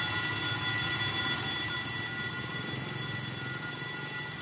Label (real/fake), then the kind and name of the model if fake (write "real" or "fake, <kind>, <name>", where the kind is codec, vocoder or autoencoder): real